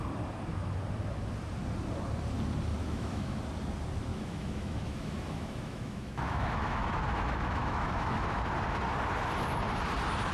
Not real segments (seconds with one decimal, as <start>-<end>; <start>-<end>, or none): 2.8-3.4; 4.1-8.4